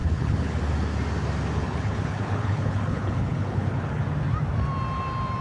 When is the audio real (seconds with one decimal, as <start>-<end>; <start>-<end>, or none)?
0.6-1.6; 4.0-5.4